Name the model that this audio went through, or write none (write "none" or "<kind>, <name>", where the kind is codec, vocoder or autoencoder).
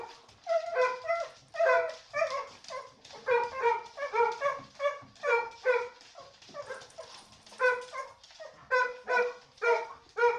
none